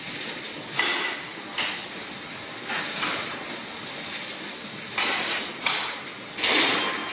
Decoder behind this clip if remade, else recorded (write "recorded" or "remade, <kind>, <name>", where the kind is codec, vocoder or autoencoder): recorded